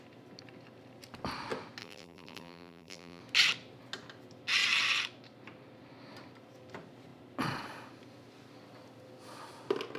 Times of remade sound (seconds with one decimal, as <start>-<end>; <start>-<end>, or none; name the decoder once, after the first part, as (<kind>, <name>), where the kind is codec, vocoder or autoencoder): 1.8-3.2 (vocoder, BigVGAN v2)

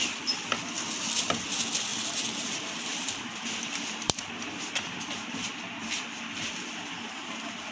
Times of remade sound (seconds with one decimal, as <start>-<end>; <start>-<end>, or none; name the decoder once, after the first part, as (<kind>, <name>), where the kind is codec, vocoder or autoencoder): 1.9-6.5 (vocoder, BigVGAN v2)

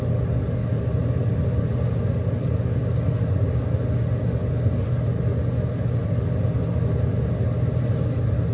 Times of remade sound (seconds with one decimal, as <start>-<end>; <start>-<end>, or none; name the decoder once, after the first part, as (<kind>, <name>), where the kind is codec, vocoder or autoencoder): 0.6-2.0 (vocoder, BigVGAN v2)